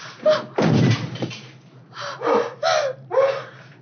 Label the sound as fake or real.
real